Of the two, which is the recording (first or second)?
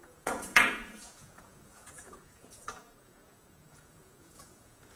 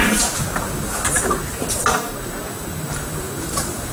second